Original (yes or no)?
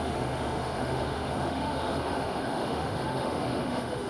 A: no